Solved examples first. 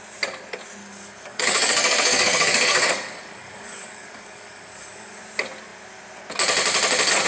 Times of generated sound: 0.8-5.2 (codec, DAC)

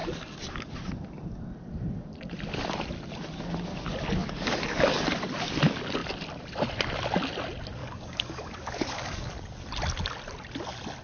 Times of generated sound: 0.0-0.7 (codec, DAC); 4.2-5.0; 7.8-9.3